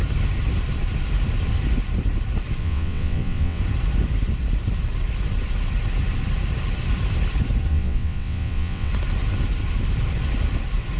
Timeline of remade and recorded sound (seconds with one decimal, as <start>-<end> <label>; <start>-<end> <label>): 0.0-2.6 recorded; 2.6-3.6 remade; 3.6-7.7 recorded; 7.7-8.9 remade; 8.9-11.0 recorded